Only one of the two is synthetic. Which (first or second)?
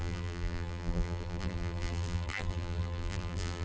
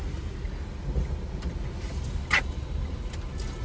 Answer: first